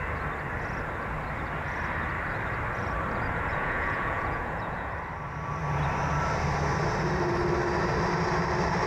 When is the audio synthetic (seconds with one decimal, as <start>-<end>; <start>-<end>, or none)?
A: 3.5-4.9